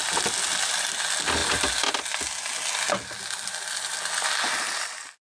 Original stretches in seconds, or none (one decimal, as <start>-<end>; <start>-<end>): 0.0-5.3